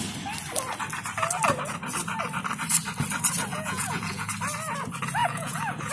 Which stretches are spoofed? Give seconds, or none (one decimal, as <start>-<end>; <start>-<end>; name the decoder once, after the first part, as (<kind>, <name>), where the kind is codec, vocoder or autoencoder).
3.5-4.3 (vocoder, Vocos); 5.2-5.9